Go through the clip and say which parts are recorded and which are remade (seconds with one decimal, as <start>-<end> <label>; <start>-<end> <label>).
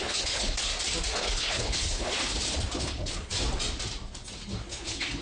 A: 0.0-0.7 remade; 0.7-1.2 recorded; 1.2-2.2 remade; 2.2-2.8 recorded; 2.8-3.3 remade; 3.3-4.7 recorded; 4.7-5.2 remade